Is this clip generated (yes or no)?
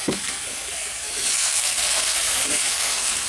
yes